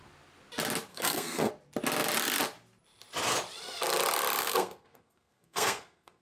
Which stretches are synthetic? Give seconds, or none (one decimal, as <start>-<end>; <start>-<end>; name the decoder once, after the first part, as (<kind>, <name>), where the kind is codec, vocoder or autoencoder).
0.9-1.5 (codec, SNAC); 4.4-6.2